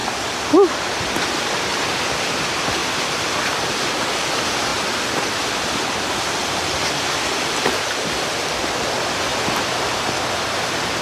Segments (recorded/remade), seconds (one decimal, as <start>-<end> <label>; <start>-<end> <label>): 0.0-2.8 recorded; 2.8-4.2 remade; 4.2-9.3 recorded; 9.3-10.1 remade; 10.1-11.0 recorded